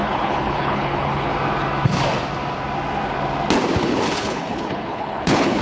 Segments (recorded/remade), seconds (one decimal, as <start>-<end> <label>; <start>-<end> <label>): 0.0-1.3 remade; 1.3-3.8 recorded; 3.8-5.6 remade